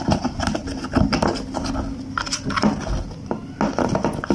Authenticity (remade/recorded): recorded